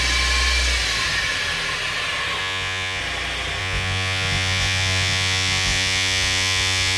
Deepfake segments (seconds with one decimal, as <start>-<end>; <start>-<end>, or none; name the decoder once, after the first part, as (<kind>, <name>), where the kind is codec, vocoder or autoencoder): 2.4-3.0 (vocoder, Vocos); 3.6-7.0